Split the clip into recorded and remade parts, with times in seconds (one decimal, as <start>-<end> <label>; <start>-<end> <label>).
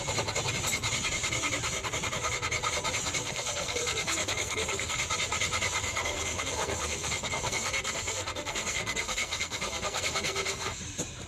0.0-3.2 recorded; 3.2-5.0 remade; 5.0-5.8 recorded; 5.8-10.8 remade; 10.8-11.3 recorded